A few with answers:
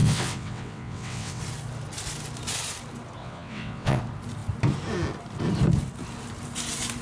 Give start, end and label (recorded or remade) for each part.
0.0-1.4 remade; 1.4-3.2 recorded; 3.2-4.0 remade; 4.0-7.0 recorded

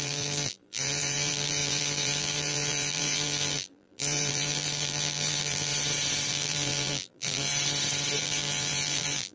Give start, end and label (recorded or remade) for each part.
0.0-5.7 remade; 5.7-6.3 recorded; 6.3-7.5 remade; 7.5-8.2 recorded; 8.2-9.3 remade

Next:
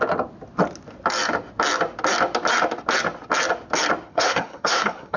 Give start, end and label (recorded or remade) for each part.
0.0-4.1 recorded; 4.1-5.2 remade